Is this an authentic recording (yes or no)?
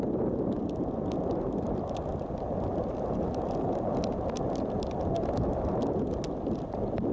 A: yes